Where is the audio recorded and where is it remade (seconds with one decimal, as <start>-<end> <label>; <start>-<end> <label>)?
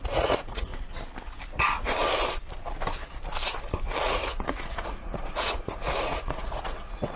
0.0-0.7 remade; 0.7-4.0 recorded; 4.0-7.2 remade